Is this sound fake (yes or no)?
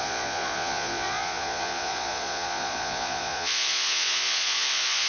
yes